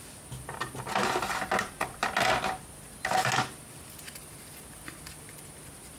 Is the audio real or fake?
real